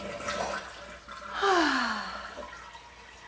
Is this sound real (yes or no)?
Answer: yes